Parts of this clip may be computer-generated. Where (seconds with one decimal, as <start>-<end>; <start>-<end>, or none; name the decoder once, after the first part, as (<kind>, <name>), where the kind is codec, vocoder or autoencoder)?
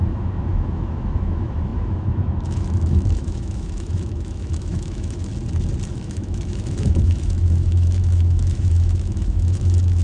0.0-5.3 (autoencoder, DAC-VAE); 5.9-10.0